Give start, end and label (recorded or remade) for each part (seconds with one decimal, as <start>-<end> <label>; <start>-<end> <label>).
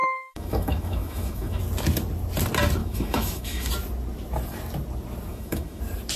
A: 0.0-1.6 remade; 1.6-2.8 recorded; 2.8-3.7 remade; 3.7-5.3 recorded; 5.3-5.8 remade; 5.8-6.2 recorded